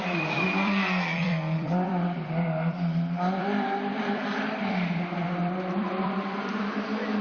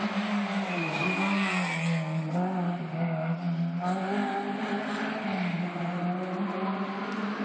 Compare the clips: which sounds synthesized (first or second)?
first